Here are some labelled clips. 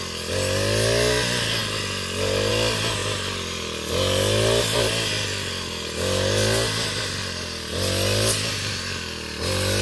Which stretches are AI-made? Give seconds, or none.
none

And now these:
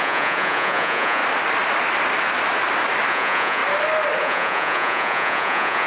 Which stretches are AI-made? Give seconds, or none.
0.0-1.2 (vocoder, Vocos); 3.1-3.6; 4.2-5.9

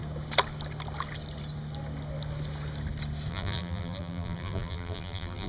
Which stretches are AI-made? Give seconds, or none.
3.3-5.5 (vocoder, BigVGAN v2)

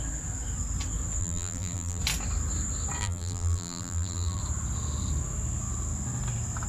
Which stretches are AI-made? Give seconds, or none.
1.2-2.0 (vocoder, BigVGAN v2); 3.0-4.4

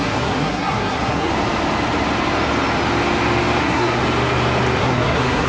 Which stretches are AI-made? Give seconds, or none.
0.0-1.3 (codec, SNAC); 3.6-4.0; 4.8-5.5

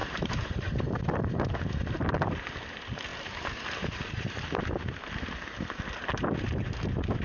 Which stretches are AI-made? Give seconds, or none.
0.0-2.1 (vocoder, BigVGAN v2); 3.1-4.6

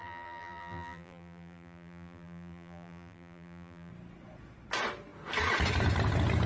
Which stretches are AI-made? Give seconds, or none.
0.0-3.9 (vocoder, BigVGAN v2)